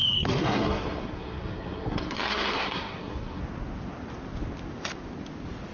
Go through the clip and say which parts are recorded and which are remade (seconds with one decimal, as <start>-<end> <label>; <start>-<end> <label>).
0.0-3.4 remade; 3.4-5.7 recorded